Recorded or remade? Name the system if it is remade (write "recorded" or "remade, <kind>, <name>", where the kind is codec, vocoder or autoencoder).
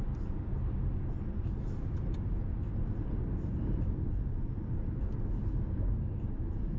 recorded